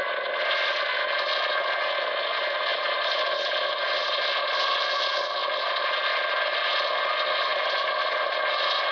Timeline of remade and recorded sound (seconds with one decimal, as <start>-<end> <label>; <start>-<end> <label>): 0.0-2.7 recorded; 2.7-3.3 remade; 3.3-5.4 recorded; 5.4-6.2 remade; 6.2-7.5 recorded; 7.5-8.4 remade; 8.4-8.9 recorded